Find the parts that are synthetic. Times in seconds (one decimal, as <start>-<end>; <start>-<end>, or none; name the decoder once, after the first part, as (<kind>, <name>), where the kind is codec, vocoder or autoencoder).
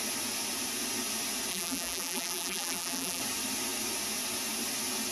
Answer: 1.5-3.2 (vocoder, BigVGAN v2)